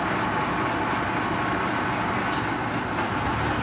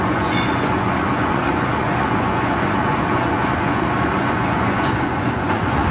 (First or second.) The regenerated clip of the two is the second